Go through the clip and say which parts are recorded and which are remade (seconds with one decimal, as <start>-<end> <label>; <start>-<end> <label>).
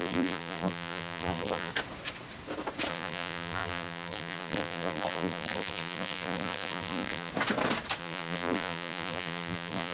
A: 0.0-1.7 remade; 1.7-2.9 recorded; 2.9-7.3 remade; 7.3-8.0 recorded; 8.0-9.9 remade